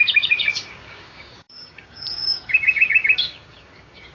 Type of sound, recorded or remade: remade